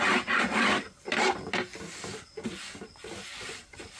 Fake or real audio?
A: real